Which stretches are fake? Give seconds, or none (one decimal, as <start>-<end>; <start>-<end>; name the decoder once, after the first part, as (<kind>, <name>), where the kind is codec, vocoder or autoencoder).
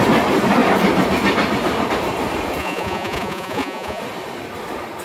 2.6-4.0 (vocoder, Vocos)